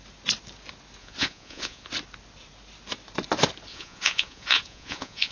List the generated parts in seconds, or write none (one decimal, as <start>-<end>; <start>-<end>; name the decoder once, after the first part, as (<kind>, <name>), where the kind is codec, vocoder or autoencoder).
1.0-1.9 (vocoder, Vocos); 3.7-5.3